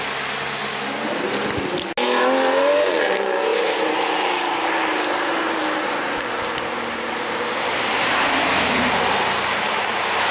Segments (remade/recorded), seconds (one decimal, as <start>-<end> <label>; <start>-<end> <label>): 0.0-3.5 recorded; 3.5-4.3 remade; 4.3-5.3 recorded; 5.3-10.3 remade